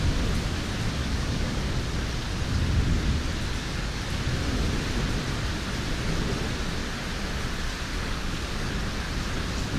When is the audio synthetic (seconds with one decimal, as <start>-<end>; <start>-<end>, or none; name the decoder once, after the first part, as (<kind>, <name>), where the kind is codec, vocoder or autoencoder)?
1.0-1.7 (codec, DAC); 3.5-4.0; 7.9-8.7